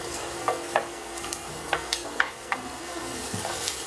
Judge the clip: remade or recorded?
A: remade